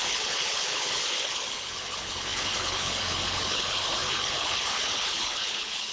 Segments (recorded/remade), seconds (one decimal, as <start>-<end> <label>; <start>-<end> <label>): 0.0-5.9 remade